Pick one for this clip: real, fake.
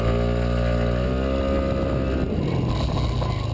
real